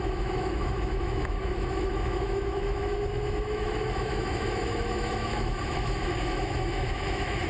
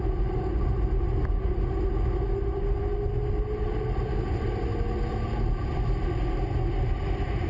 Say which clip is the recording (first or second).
second